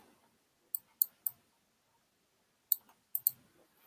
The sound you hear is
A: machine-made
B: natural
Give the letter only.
B